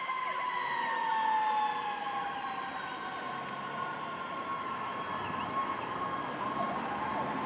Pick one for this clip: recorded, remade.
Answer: recorded